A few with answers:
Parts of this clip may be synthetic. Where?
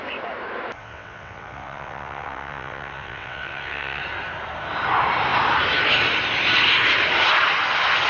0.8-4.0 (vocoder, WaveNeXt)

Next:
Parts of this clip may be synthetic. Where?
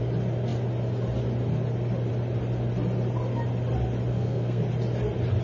4.1-4.6 (codec, SNAC)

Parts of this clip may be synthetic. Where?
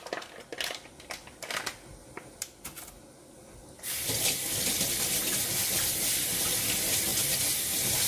none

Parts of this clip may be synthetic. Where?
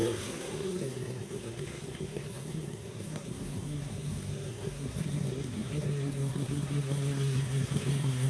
0.0-8.3 (codec, SNAC)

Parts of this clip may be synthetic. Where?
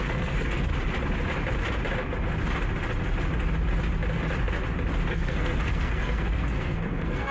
0.0-0.7 (codec, SNAC); 5.1-7.3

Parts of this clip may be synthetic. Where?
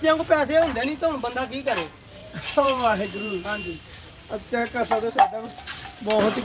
2.2-4.1 (vocoder, BigVGAN v2)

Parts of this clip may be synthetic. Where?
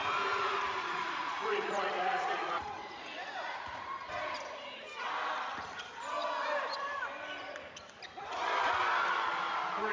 0.0-4.2 (vocoder, Vocos)